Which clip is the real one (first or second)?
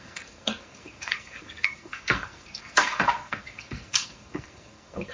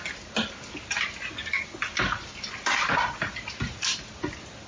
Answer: second